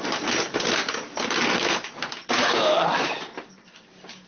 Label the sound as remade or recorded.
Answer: recorded